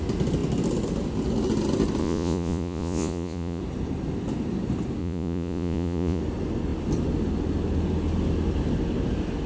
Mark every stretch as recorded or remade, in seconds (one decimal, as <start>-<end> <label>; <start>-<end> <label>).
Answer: 0.0-2.0 recorded; 2.0-3.6 remade; 3.6-5.0 recorded; 5.0-6.2 remade; 6.2-9.5 recorded

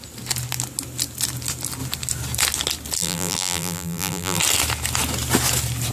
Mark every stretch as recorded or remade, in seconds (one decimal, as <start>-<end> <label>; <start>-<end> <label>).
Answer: 0.0-3.0 recorded; 3.0-4.4 remade; 4.4-5.9 recorded

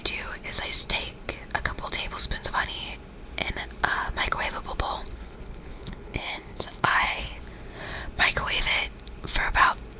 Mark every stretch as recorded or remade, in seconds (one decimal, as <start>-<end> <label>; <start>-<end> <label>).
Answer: 0.0-5.1 recorded; 5.1-7.4 remade; 7.4-10.0 recorded

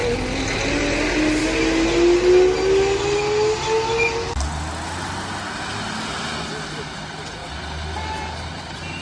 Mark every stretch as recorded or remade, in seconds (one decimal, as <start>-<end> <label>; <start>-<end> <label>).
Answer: 0.0-9.0 recorded

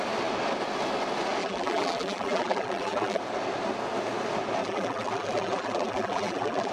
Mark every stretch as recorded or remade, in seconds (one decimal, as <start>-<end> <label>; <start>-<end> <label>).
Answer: 0.0-1.4 recorded; 1.4-3.2 remade; 3.2-4.6 recorded; 4.6-6.7 remade

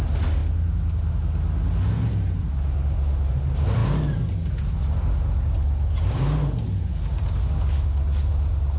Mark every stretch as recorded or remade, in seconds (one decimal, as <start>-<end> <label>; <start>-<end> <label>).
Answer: 0.0-8.8 recorded

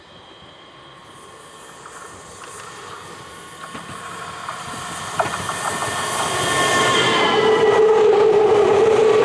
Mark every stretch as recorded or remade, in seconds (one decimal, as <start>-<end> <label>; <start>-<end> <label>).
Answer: 0.0-9.2 recorded